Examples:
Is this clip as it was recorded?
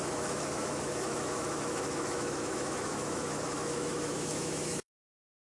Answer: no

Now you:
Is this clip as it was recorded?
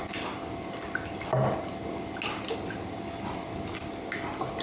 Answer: yes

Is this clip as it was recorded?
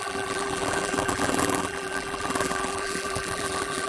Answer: no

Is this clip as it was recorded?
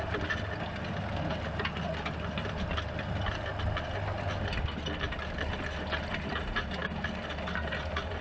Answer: yes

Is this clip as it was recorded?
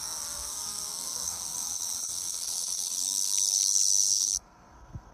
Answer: no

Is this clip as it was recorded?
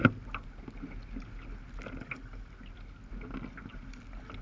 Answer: yes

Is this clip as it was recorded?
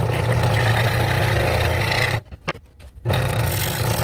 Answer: yes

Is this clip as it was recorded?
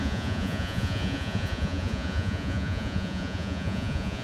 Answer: no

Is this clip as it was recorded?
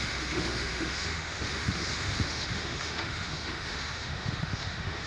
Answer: no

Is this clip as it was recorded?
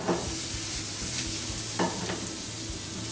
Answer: yes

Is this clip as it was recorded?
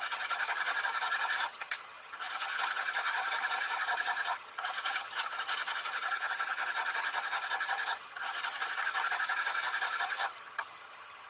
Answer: no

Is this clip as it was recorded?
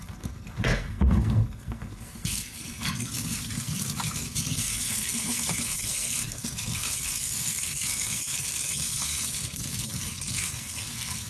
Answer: no